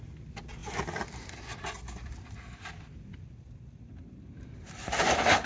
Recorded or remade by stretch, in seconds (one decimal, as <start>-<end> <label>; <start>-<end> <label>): 0.0-5.5 recorded